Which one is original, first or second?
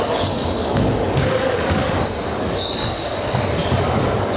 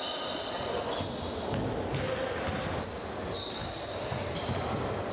second